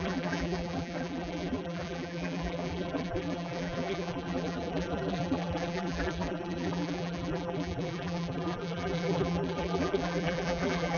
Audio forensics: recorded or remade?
remade